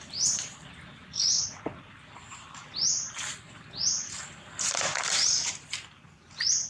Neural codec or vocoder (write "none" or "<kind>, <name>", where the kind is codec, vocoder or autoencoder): vocoder, BigVGAN v2